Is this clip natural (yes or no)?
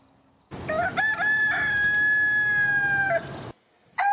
yes